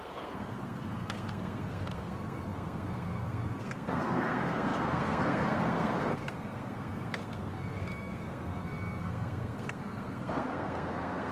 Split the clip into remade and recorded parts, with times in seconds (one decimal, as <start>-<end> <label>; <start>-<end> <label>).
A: 0.0-11.3 remade